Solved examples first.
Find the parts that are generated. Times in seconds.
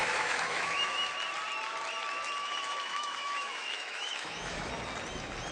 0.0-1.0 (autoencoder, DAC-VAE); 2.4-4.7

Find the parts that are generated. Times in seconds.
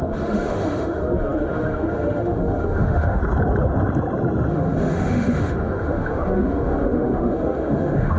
0.0-3.2 (autoencoder, DAC-VAE); 4.5-8.2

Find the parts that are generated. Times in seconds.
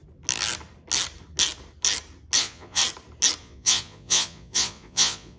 2.4-2.8 (vocoder, Vocos); 3.4-5.4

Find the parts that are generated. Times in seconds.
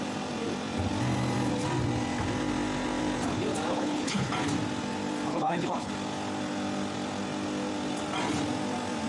3.7-4.3 (codec, HILCodec); 5.3-5.9